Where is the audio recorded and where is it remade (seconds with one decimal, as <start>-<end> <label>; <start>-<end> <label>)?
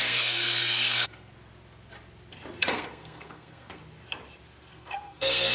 0.0-1.3 remade; 1.3-2.6 recorded; 2.6-3.8 remade; 3.8-4.7 recorded; 4.7-5.5 remade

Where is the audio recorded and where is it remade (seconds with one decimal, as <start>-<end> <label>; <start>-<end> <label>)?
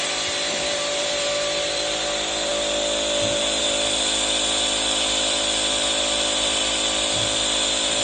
0.0-8.0 remade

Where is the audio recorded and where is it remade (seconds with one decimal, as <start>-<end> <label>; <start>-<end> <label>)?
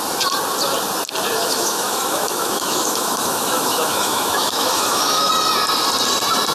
0.0-1.4 recorded; 1.4-5.3 remade; 5.3-6.5 recorded